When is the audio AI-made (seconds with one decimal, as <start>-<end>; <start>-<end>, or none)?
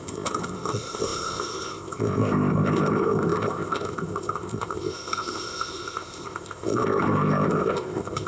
0.0-8.3